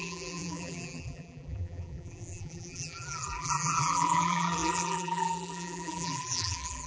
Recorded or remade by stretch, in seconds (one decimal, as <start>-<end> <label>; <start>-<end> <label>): 0.0-6.9 remade